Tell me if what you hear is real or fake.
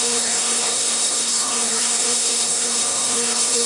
fake